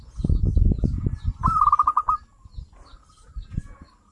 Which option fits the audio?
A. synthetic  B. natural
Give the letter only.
B